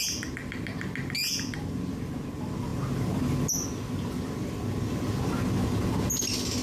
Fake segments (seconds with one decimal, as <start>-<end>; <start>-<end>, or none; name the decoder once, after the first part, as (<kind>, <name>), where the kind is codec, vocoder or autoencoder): none